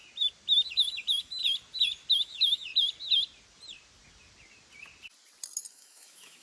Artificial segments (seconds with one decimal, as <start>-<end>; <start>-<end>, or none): 0.7-1.4; 2.1-2.7; 5.7-6.4